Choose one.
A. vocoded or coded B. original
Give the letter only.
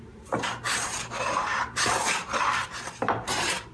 A